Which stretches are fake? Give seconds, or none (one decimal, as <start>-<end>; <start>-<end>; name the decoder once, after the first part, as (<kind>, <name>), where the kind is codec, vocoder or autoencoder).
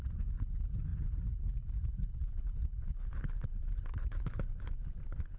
0.0-5.4 (codec, HILCodec)